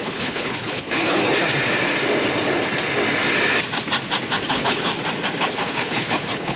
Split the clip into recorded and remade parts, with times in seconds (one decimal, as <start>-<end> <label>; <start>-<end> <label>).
0.0-1.2 remade; 1.2-4.5 recorded; 4.5-4.9 remade; 4.9-5.5 recorded; 5.5-6.6 remade